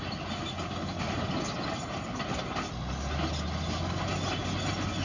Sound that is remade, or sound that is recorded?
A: recorded